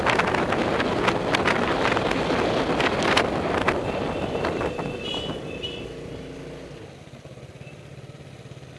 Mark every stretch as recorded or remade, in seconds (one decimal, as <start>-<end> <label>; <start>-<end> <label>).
0.0-8.8 recorded